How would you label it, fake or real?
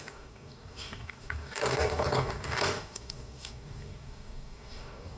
fake